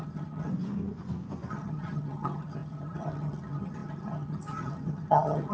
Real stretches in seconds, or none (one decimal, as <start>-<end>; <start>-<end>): 0.5-1.5